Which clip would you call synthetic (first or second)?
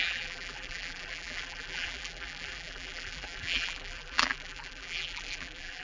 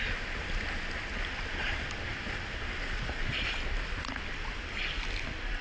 first